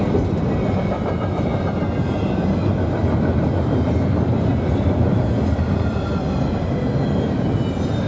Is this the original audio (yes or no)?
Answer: yes